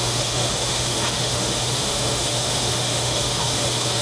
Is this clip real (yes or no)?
no